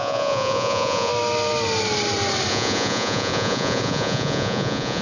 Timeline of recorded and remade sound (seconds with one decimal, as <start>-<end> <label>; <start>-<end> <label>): 0.0-1.1 remade; 1.1-2.5 recorded; 2.5-5.0 remade